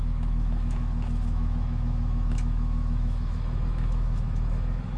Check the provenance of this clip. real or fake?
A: fake